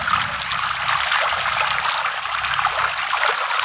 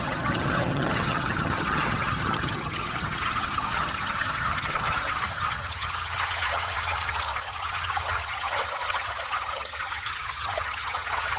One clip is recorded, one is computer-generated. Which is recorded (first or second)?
first